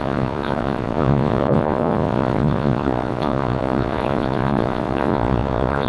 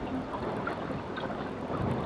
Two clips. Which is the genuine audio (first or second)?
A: second